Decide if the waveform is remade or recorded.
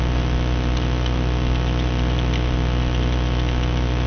recorded